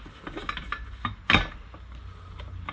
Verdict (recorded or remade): recorded